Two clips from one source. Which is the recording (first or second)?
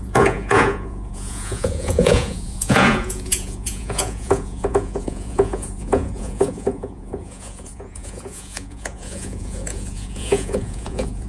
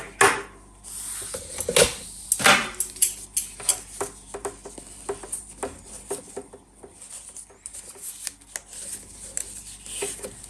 second